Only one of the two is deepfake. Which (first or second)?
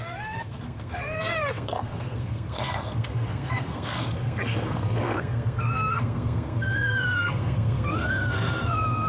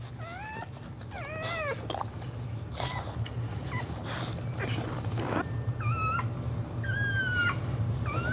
first